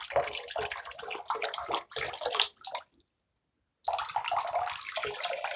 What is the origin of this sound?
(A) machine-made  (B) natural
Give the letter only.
B